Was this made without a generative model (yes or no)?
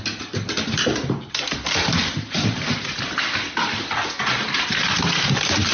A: yes